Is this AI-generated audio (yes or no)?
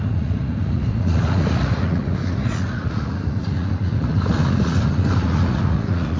yes